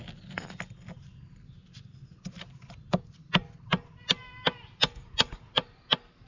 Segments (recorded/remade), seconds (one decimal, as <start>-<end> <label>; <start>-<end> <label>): 0.0-6.3 recorded